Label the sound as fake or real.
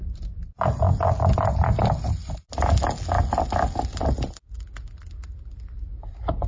real